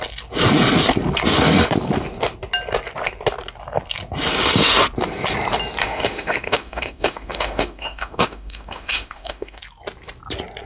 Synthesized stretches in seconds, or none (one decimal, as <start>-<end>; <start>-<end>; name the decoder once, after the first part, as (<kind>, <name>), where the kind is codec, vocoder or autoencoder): 5.8-9.6 (autoencoder, DAC-VAE)